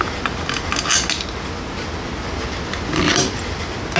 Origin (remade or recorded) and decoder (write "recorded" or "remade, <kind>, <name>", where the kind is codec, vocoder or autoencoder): recorded